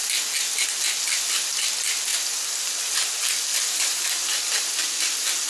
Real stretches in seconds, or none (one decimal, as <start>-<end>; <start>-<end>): 0.0-3.5; 4.4-5.5